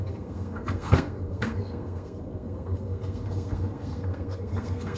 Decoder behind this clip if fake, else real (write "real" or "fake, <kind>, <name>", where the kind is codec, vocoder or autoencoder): fake, codec, SNAC